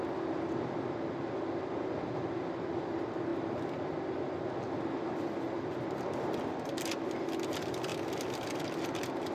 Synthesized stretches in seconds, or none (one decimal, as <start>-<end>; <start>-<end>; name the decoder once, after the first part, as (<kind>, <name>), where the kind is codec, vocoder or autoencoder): none